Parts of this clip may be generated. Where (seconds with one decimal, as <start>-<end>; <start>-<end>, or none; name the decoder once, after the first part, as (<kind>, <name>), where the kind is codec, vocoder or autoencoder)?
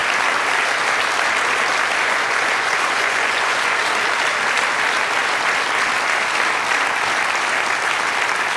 2.0-3.8 (vocoder, Vocos)